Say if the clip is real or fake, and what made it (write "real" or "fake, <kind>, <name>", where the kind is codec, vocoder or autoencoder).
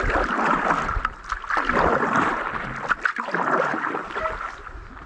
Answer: real